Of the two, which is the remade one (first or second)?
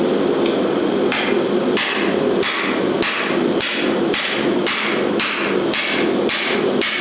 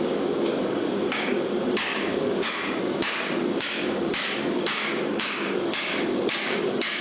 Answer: second